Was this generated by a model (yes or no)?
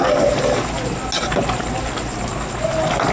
no